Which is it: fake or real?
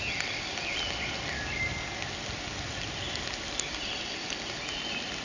real